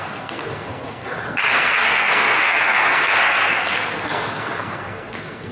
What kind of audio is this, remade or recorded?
remade